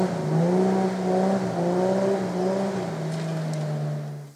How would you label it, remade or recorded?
recorded